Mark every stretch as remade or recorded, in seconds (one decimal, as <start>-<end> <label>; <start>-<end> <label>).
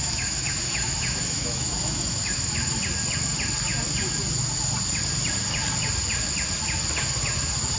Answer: 0.0-2.8 remade; 2.8-7.8 recorded